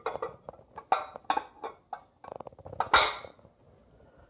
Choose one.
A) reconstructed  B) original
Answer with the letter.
B